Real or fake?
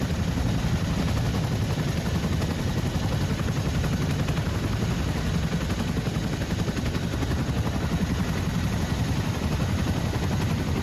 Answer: real